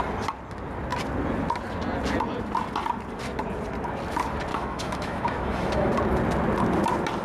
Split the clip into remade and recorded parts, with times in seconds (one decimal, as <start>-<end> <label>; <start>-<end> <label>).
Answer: 0.0-4.5 recorded; 4.5-5.9 remade; 5.9-7.2 recorded